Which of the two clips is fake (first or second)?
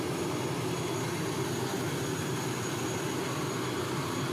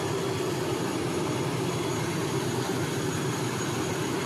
second